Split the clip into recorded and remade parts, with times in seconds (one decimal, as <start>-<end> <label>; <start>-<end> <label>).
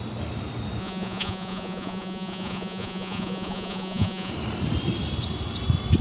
0.0-0.8 recorded; 0.8-4.3 remade; 4.3-6.0 recorded